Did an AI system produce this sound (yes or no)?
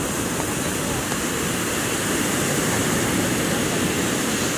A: yes